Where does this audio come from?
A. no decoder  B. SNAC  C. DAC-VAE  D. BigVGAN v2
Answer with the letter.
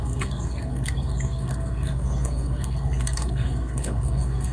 B